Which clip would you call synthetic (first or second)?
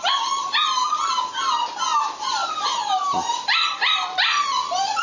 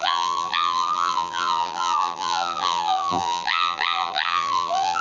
second